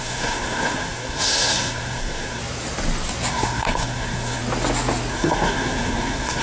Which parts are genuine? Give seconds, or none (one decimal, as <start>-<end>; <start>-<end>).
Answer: 2.4-3.3; 4.4-5.1